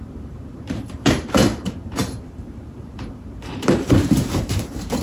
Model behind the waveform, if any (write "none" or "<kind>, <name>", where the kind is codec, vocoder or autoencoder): vocoder, BigVGAN v2